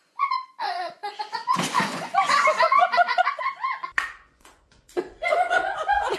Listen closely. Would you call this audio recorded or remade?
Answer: remade